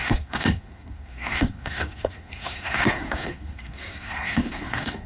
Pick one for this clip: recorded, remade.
remade